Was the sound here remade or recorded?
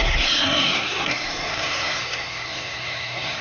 remade